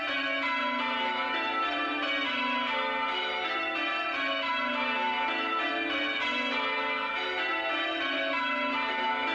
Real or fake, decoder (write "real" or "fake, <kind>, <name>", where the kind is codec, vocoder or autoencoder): real